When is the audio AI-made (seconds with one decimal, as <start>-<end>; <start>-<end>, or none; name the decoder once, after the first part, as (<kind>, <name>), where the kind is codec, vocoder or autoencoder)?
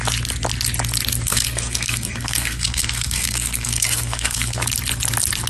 1.3-4.6 (codec, SNAC)